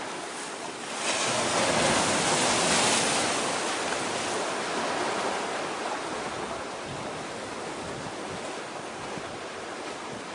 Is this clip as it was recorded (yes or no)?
yes